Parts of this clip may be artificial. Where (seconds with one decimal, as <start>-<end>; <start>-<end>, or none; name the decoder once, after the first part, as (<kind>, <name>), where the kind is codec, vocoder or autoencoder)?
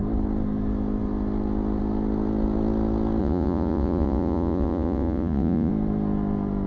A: 3.2-5.7 (vocoder, Vocos)